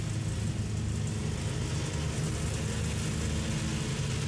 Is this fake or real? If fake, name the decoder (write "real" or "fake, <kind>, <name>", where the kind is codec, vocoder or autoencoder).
real